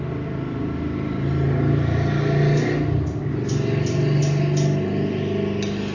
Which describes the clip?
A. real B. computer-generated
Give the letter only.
A